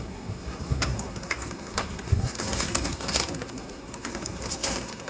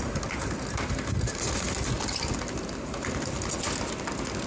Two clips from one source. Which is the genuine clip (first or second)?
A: second